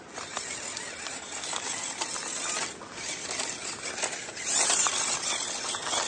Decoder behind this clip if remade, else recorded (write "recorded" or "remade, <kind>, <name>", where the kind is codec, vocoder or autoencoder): recorded